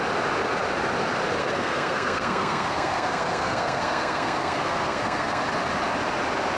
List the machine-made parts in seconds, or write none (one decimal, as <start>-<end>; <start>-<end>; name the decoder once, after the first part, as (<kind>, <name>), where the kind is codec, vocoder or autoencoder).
1.4-5.4 (codec, SNAC)